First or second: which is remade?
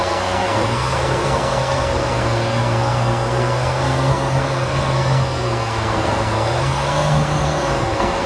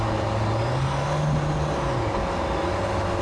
first